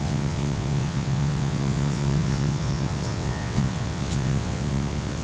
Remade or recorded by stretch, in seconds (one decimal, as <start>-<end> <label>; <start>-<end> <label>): 0.0-5.2 remade

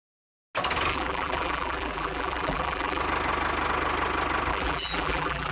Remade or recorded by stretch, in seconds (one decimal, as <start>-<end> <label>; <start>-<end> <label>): 0.0-0.9 recorded; 0.9-3.0 remade; 3.0-4.5 recorded; 4.5-5.5 remade

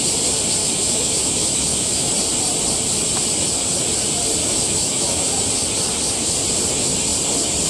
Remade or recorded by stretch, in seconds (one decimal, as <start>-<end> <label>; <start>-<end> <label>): 0.0-0.6 recorded; 0.6-2.1 remade; 2.1-4.4 recorded; 4.4-5.3 remade; 5.3-7.7 recorded

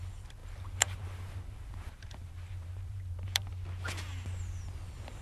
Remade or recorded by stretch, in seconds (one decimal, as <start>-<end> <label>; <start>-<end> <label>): 0.0-0.4 recorded; 0.4-3.5 remade; 3.5-5.2 recorded

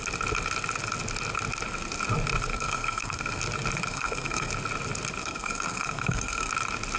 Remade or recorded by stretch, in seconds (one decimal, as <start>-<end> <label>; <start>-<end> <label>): 0.0-2.5 recorded; 2.5-3.4 remade; 3.4-3.9 recorded; 3.9-4.5 remade; 4.5-5.2 recorded; 5.2-6.5 remade; 6.5-7.0 recorded

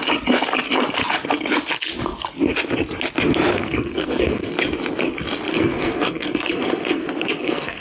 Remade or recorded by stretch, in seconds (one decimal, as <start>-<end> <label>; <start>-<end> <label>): 0.0-3.5 recorded; 3.5-4.5 remade; 4.5-5.5 recorded; 5.5-7.8 remade

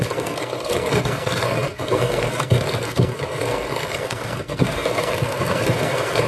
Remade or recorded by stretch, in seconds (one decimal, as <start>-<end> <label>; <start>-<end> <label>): 0.0-6.3 remade